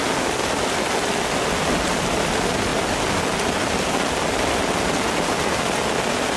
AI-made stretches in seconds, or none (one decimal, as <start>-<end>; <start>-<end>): none